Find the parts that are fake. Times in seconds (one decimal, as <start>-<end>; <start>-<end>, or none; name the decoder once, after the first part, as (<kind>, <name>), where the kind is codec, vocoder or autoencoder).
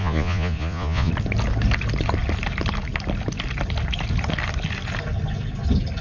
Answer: 0.0-1.1 (vocoder, Vocos)